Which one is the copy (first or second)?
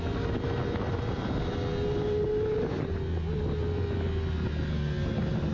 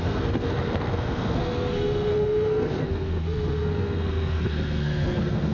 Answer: second